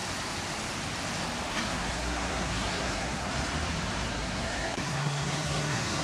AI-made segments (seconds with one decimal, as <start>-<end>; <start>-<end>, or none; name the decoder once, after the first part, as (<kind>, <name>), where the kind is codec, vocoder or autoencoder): 1.5-3.3 (codec, SNAC); 4.1-6.0